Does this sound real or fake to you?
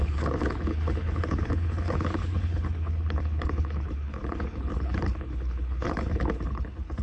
fake